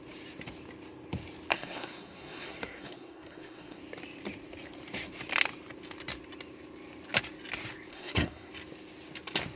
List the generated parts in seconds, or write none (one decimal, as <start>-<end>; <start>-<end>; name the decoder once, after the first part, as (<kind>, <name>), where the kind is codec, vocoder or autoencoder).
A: 1.5-3.8 (codec, SNAC); 7.9-8.5